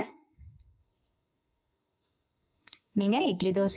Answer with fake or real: fake